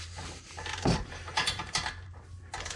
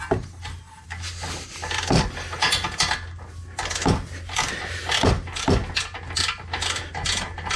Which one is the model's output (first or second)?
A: first